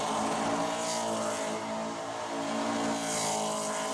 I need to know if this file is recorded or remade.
recorded